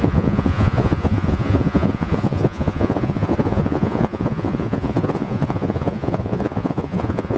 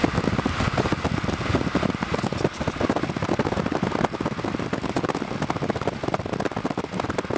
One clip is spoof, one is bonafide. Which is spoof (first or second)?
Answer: first